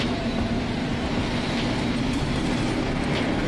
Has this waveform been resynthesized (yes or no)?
no